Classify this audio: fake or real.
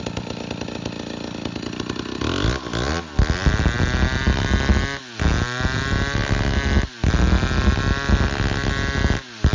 real